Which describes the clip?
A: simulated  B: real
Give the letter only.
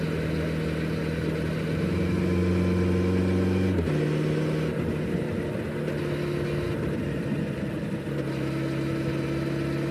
B